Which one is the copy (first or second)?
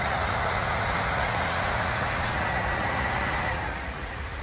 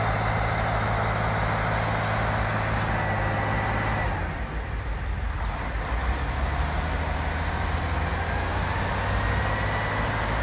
first